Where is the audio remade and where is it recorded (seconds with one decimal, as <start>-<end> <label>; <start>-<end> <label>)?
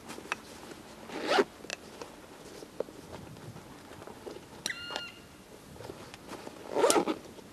0.0-7.5 recorded